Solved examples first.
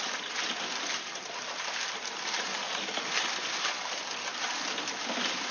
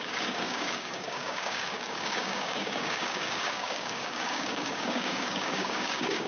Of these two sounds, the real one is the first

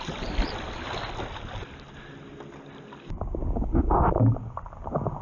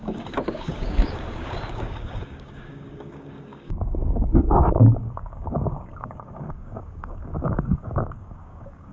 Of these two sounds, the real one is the first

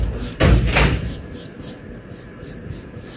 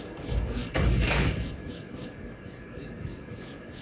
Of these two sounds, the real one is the first